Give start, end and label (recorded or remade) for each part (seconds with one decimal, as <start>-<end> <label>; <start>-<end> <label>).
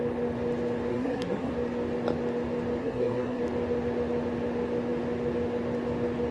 0.0-0.9 recorded; 0.9-1.5 remade; 1.5-2.8 recorded; 2.8-3.4 remade; 3.4-6.3 recorded